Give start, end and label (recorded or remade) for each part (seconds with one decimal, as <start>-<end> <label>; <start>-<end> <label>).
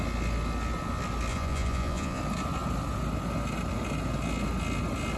0.0-1.3 recorded; 1.3-2.2 remade; 2.2-5.2 recorded